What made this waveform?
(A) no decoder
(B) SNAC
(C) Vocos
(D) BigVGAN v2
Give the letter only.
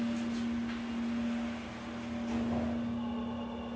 A